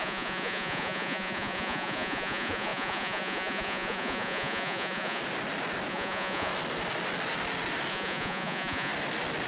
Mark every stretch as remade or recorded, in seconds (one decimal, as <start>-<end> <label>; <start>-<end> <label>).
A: 0.0-5.2 remade; 5.2-5.9 recorded; 5.9-6.5 remade; 6.5-7.9 recorded; 7.9-8.9 remade; 8.9-9.5 recorded